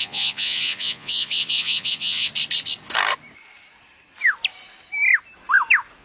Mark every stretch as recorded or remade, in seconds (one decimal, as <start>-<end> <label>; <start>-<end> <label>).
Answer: 0.0-2.3 remade; 2.3-6.0 recorded